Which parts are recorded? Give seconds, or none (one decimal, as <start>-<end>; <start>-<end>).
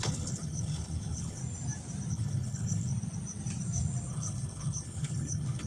1.4-2.1; 2.9-4.1